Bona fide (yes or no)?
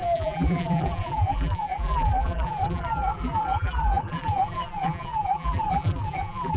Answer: no